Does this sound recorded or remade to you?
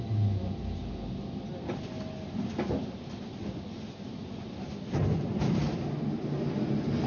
recorded